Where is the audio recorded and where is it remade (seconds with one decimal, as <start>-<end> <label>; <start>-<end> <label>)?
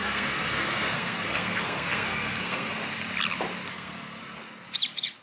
0.0-2.7 remade; 2.7-3.7 recorded; 3.7-4.2 remade; 4.2-5.2 recorded